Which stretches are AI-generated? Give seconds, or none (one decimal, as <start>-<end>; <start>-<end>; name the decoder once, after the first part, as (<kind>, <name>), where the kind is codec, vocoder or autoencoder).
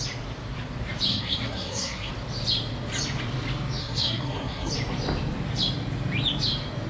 1.1-2.1 (codec, SNAC); 3.8-4.7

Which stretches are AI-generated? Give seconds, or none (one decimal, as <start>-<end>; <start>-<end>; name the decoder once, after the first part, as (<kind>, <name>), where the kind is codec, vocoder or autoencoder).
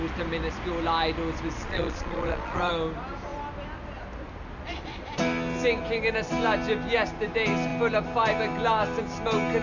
1.6-2.7 (vocoder, Vocos)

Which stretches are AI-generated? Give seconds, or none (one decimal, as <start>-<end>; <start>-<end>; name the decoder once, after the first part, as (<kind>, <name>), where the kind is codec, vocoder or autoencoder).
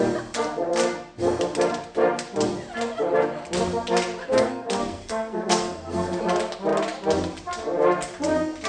4.2-6.2 (codec, SNAC)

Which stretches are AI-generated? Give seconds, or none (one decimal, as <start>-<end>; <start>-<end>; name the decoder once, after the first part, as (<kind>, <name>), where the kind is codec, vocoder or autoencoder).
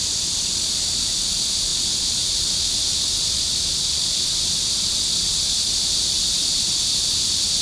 none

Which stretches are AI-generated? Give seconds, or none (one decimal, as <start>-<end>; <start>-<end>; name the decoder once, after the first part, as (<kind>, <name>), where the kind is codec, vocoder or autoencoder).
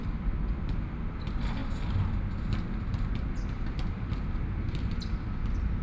none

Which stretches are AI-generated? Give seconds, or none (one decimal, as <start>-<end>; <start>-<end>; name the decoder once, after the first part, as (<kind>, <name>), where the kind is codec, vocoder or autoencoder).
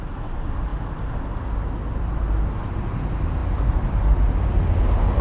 none